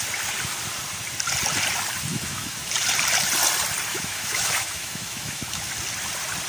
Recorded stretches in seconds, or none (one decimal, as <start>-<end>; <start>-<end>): 0.0-2.1; 2.7-3.9; 5.7-6.5